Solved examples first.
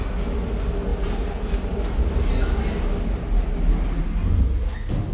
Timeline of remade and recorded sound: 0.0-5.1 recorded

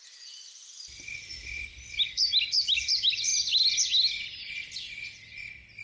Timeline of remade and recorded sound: 0.0-5.8 recorded

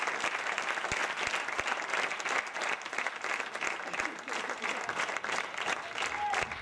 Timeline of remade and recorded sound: 0.0-6.6 recorded

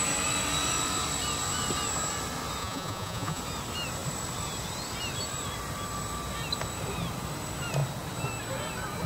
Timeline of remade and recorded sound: 0.0-2.6 recorded; 2.6-3.4 remade; 3.4-9.1 recorded

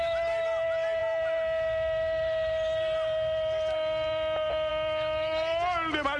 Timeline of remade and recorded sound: 0.0-6.2 recorded